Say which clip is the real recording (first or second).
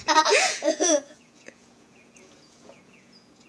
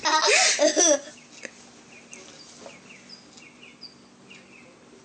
second